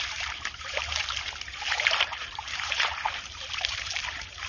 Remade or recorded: remade